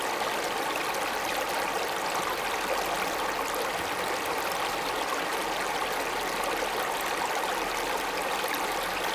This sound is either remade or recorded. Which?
recorded